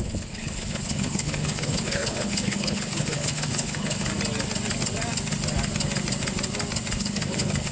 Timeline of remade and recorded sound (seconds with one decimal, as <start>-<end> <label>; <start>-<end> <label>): 0.0-4.1 remade; 4.1-7.0 recorded; 7.0-7.7 remade